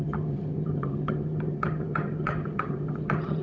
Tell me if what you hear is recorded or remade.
remade